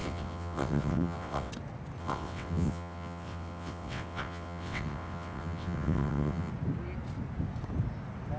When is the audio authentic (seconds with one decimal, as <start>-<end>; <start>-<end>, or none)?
1.5-2.0; 6.5-8.4